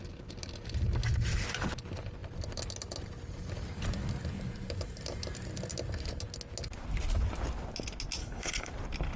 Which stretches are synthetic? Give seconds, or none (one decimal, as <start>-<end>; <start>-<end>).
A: 8.2-8.7